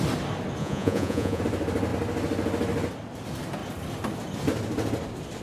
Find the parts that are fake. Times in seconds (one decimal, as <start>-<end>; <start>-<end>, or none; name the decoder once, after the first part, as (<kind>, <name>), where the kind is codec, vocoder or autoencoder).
0.6-1.4 (vocoder, Vocos)

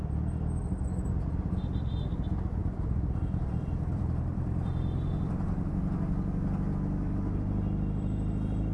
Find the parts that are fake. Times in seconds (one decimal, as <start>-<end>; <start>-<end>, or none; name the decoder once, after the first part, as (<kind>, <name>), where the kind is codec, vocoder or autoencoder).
2.6-5.7 (vocoder, BigVGAN v2)

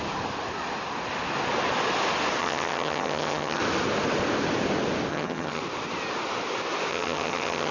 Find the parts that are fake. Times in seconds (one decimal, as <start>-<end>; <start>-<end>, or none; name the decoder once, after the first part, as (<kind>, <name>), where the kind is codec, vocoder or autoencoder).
2.4-3.6 (vocoder, HiFi-GAN); 5.1-5.6; 6.9-7.7

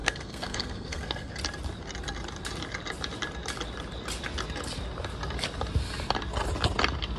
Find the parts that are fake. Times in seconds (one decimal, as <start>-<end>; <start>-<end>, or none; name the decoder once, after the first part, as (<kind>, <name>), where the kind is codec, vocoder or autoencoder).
0.0-1.3 (codec, SNAC)

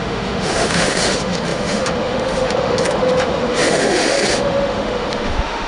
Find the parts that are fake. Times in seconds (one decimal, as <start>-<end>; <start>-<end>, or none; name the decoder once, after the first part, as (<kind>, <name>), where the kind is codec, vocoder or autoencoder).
0.0-5.7 (autoencoder, DAC-VAE)

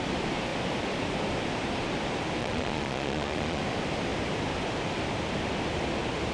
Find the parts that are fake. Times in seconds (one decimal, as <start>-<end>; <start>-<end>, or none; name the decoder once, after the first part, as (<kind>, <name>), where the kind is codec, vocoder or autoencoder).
2.4-3.6 (vocoder, Vocos)

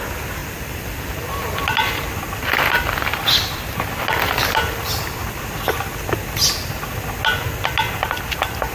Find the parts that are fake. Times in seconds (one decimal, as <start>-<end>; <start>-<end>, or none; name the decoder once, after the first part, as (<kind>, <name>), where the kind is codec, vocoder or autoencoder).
3.1-3.8 (vocoder, BigVGAN v2)

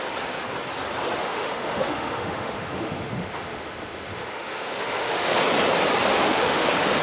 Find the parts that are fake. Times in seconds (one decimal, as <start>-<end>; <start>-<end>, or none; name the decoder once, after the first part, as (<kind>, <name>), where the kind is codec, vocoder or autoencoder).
1.2-5.4 (autoencoder, DAC-VAE); 6.1-7.0